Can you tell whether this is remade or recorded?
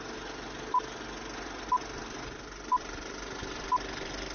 recorded